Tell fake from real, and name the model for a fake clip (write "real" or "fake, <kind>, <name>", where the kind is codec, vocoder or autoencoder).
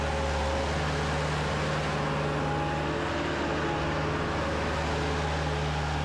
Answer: real